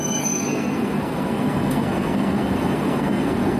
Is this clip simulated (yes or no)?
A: yes